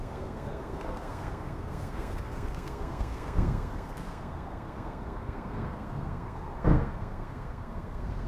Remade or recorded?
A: remade